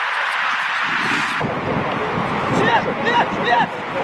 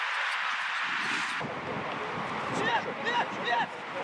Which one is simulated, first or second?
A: first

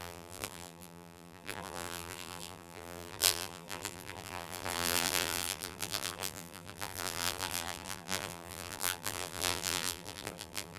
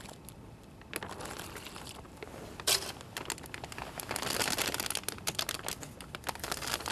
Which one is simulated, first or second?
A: first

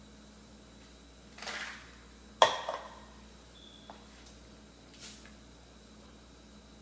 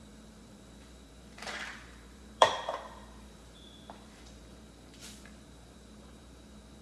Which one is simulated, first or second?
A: second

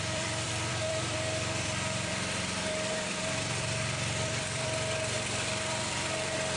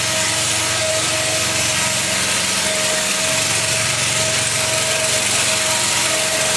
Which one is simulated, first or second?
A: first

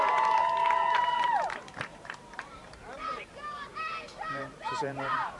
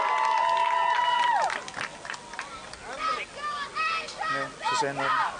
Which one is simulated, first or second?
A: first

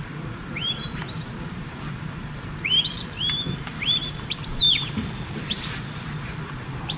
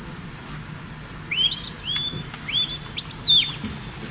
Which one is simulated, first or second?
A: first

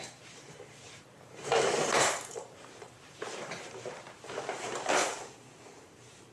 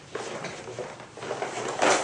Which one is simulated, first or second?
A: first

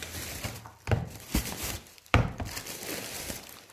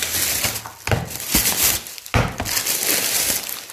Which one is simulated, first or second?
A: first